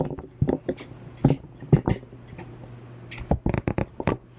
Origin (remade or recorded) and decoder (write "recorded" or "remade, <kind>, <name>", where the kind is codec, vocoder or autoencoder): recorded